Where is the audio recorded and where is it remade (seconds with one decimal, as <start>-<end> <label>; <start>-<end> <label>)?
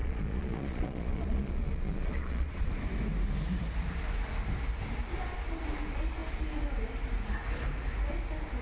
0.0-2.7 remade; 2.7-8.6 recorded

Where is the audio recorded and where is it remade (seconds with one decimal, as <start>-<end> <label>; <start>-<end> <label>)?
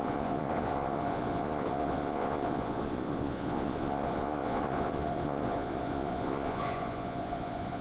0.0-7.8 remade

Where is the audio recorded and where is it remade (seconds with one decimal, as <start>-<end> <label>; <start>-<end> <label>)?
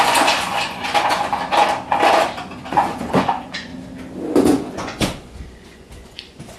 0.0-1.3 remade; 1.3-1.9 recorded; 1.9-3.7 remade; 3.7-4.4 recorded; 4.4-6.6 remade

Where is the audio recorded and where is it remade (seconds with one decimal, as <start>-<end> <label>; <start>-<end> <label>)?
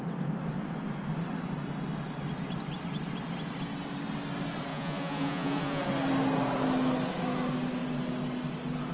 0.0-4.7 recorded; 4.7-5.8 remade; 5.8-8.9 recorded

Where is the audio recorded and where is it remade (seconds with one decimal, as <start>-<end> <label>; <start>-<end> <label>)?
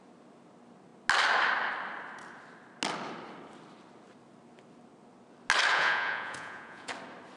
0.0-5.7 recorded; 5.7-6.9 remade; 6.9-7.4 recorded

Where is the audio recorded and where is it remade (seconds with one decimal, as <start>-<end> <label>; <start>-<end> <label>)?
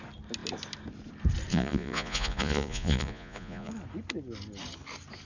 0.0-1.5 recorded; 1.5-3.7 remade; 3.7-5.2 recorded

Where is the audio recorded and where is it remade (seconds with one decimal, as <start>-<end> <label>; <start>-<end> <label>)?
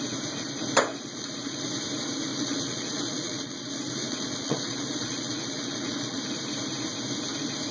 0.0-0.9 recorded; 0.9-1.7 remade; 1.7-2.3 recorded; 2.3-6.2 remade; 6.2-7.7 recorded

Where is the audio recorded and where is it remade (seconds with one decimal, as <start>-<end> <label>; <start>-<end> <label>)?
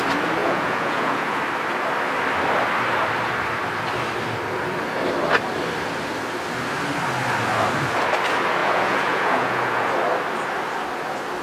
0.0-0.4 recorded; 0.4-1.4 remade; 1.4-8.6 recorded; 8.6-9.9 remade; 9.9-11.4 recorded